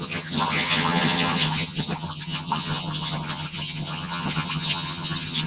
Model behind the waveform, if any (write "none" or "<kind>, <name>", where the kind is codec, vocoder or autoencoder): vocoder, HiFi-GAN